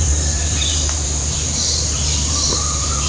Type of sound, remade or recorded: remade